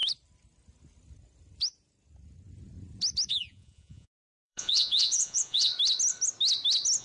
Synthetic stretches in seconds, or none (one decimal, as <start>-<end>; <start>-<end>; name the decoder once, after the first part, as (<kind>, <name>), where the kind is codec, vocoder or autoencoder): 3.3-5.7 (vocoder, Vocos)